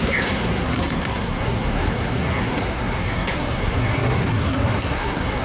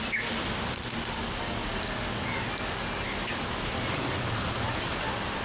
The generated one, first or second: first